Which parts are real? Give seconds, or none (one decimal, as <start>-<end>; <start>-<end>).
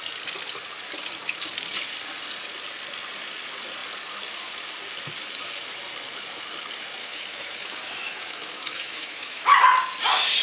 0.0-7.0; 9.6-10.4